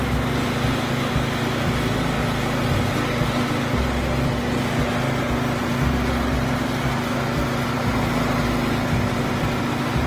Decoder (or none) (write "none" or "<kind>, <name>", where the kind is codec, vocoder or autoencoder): none